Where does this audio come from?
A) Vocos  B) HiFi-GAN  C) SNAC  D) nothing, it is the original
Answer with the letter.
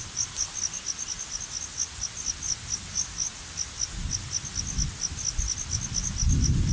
D